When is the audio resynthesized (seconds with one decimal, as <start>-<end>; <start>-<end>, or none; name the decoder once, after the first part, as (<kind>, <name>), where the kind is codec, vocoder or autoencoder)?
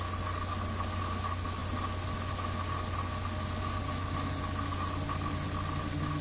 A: none